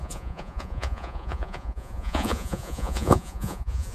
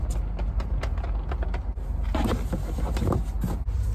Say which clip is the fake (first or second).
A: first